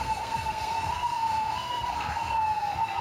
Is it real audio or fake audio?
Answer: fake